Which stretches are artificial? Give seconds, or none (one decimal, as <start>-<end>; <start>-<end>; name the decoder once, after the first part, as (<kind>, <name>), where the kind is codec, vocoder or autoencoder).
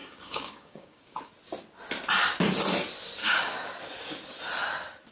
0.0-1.3 (codec, DAC); 3.2-3.7